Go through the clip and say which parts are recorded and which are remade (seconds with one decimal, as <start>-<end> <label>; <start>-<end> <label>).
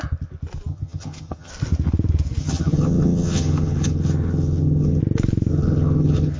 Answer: 0.0-0.7 recorded; 0.7-1.5 remade; 1.5-2.4 recorded; 2.4-5.0 remade; 5.0-5.5 recorded; 5.5-6.4 remade